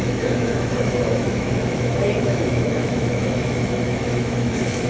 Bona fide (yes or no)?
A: no